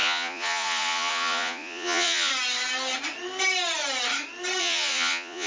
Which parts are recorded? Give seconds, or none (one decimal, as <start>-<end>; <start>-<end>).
2.3-4.6

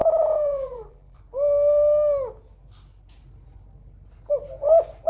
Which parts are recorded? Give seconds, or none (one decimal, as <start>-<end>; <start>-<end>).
1.2-5.1

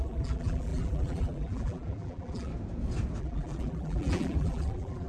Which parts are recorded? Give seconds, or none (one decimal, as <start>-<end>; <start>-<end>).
2.5-3.2

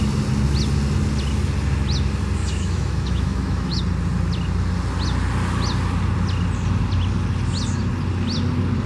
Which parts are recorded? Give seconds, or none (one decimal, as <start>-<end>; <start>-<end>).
0.0-2.4; 3.8-8.9

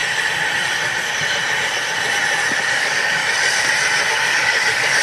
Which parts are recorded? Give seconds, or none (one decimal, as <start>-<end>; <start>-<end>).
0.0-2.7; 3.2-4.1

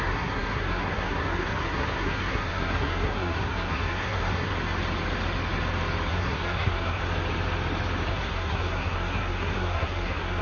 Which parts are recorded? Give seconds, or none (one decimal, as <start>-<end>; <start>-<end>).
4.5-6.1; 7.0-8.1

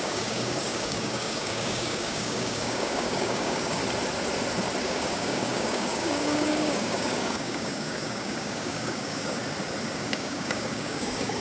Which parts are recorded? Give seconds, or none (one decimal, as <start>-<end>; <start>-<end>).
3.8-4.8; 9.4-9.9

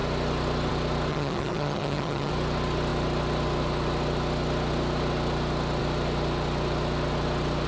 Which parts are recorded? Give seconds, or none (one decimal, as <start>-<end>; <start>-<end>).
0.0-1.1; 2.3-7.7